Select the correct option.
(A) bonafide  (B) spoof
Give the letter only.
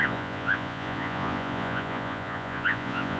B